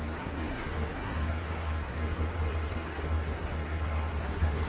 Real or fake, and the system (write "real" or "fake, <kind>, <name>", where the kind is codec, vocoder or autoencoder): fake, codec, SNAC